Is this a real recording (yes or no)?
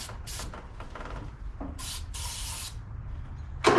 yes